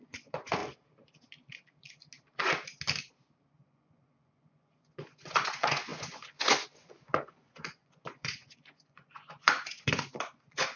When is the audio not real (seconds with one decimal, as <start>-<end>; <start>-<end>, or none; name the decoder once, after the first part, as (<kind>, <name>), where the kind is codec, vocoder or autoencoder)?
0.0-0.6 (vocoder, Vocos); 3.6-10.8